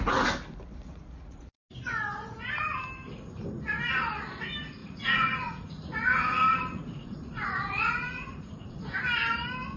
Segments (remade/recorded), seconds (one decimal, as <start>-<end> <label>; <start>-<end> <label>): 0.0-0.9 recorded; 0.9-1.4 remade; 1.4-4.8 recorded; 4.8-9.0 remade; 9.0-9.8 recorded